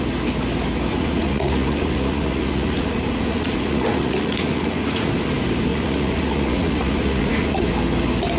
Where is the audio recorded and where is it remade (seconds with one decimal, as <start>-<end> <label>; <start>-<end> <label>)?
0.0-0.9 recorded; 0.9-5.1 remade; 5.1-5.7 recorded; 5.7-7.7 remade; 7.7-8.4 recorded